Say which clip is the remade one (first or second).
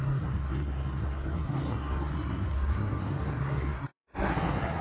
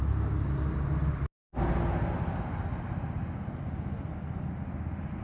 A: first